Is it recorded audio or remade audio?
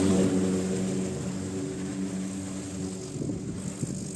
recorded